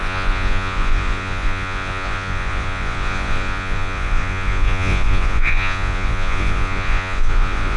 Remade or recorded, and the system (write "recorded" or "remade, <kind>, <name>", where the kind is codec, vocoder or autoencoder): remade, vocoder, Vocos